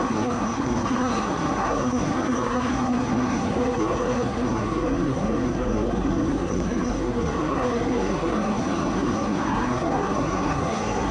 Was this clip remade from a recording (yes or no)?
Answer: yes